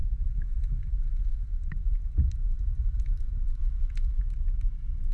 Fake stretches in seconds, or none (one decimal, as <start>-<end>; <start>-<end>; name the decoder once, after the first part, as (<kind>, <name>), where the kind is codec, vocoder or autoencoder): 0.0-1.6 (vocoder, Vocos); 3.6-4.2